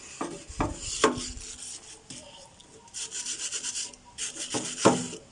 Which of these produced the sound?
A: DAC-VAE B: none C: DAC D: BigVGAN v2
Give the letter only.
B